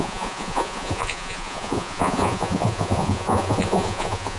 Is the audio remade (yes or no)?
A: yes